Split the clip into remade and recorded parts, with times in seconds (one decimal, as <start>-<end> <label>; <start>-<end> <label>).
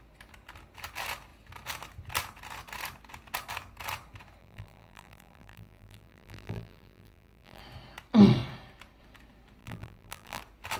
0.0-4.4 recorded; 4.4-7.6 remade; 7.6-9.6 recorded; 9.6-10.4 remade; 10.4-10.8 recorded